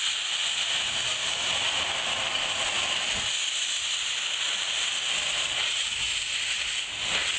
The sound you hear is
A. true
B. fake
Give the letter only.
A